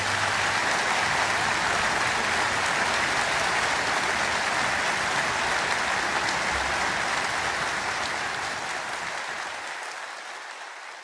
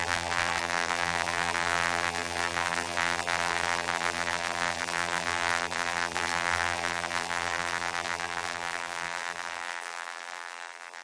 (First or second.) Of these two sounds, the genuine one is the first